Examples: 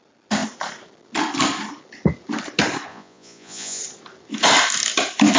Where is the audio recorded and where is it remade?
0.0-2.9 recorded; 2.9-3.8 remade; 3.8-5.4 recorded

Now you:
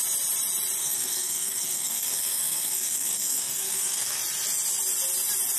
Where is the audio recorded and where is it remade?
0.0-0.8 recorded; 0.8-4.2 remade; 4.2-5.6 recorded

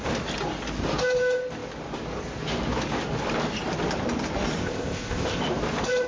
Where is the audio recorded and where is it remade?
0.0-4.6 recorded; 4.6-5.4 remade; 5.4-6.1 recorded

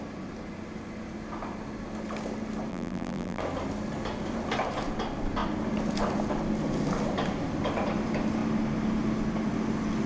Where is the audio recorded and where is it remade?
0.0-2.7 recorded; 2.7-3.4 remade; 3.4-10.1 recorded